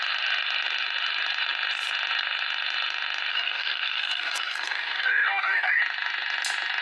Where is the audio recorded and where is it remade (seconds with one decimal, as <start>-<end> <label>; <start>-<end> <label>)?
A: 0.0-3.3 recorded; 3.3-5.8 remade; 5.8-6.8 recorded